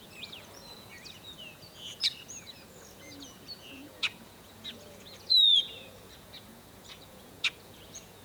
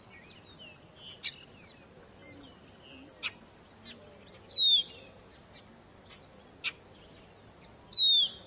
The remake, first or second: first